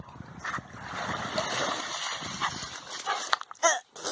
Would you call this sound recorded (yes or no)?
yes